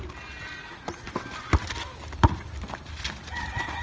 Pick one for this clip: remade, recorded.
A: recorded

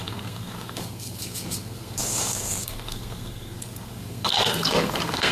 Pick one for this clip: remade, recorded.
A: remade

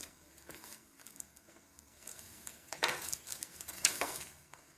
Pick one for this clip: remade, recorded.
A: remade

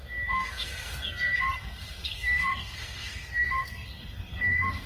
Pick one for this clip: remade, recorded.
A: remade